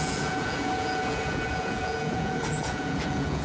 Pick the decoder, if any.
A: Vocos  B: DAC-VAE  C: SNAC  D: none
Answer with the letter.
A